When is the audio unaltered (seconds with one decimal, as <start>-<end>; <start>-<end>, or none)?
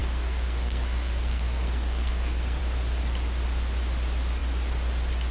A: 2.6-5.3